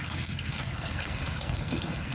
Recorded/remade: remade